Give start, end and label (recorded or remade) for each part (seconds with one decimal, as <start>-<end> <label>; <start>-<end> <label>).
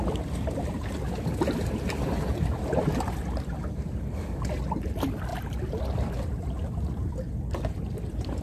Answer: 0.0-2.3 recorded; 2.3-3.6 remade; 3.6-5.3 recorded; 5.3-8.4 remade